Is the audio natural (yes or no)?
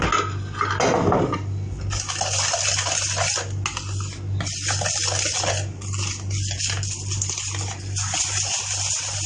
yes